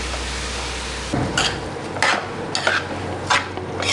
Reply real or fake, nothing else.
real